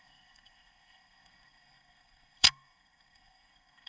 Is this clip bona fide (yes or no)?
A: no